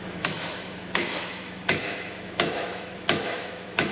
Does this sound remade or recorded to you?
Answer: remade